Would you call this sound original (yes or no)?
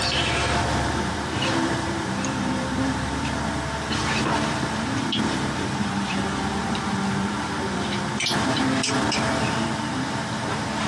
no